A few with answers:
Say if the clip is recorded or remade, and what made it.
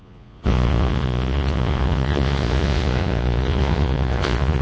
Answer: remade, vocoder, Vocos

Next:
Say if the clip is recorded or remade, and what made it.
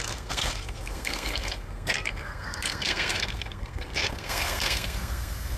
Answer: remade, codec, SNAC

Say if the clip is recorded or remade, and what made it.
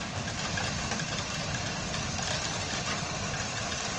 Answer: recorded